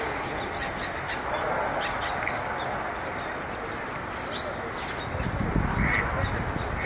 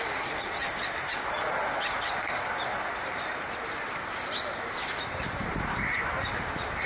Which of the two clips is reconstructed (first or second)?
second